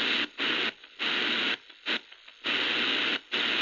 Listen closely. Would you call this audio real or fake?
real